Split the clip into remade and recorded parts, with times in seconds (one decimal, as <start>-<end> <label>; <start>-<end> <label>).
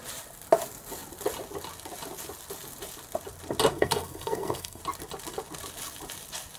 0.0-3.7 recorded; 3.7-4.8 remade; 4.8-6.6 recorded